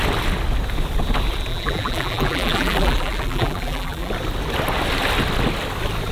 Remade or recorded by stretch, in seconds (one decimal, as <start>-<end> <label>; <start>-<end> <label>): 0.0-1.5 recorded; 1.5-4.1 remade; 4.1-6.1 recorded